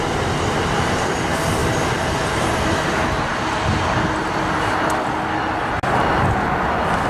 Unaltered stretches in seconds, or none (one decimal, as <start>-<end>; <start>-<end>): 0.0-7.1